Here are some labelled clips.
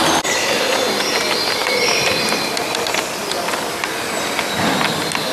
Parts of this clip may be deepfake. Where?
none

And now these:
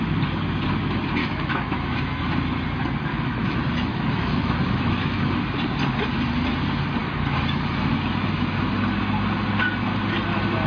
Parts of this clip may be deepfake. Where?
1.2-2.2 (autoencoder, DAC-VAE); 3.1-5.3

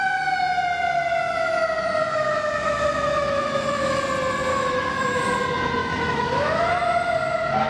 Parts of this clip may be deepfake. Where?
2.1-4.0 (autoencoder, DAC-VAE); 4.5-5.2; 5.8-6.7